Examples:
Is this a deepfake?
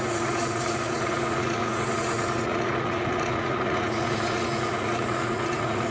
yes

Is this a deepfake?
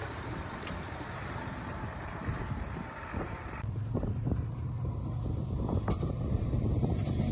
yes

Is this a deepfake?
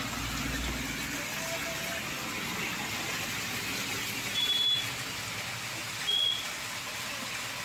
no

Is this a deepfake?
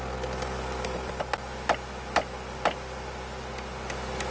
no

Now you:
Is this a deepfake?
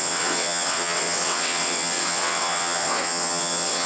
yes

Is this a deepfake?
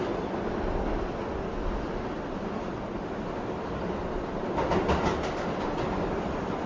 no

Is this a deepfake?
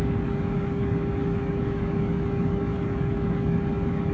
yes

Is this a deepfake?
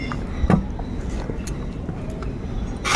no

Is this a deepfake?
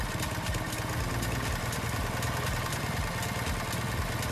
no